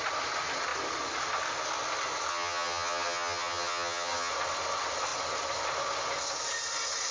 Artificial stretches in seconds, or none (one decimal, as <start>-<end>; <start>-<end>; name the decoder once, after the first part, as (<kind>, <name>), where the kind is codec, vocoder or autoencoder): 2.3-4.3 (vocoder, HiFi-GAN)